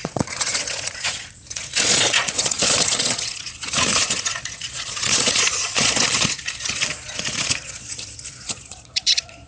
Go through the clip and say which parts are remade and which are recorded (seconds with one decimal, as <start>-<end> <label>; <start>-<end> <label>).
0.0-9.5 remade